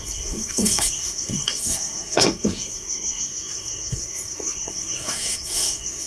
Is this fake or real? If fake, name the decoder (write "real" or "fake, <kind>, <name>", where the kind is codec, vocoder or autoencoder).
fake, codec, SNAC